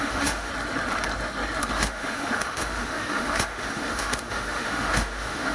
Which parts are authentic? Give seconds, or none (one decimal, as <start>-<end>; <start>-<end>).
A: 0.5-1.6